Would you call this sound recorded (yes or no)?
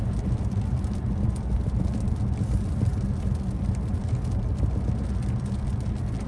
yes